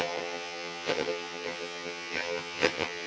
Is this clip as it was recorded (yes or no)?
no